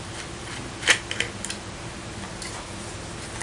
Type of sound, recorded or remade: recorded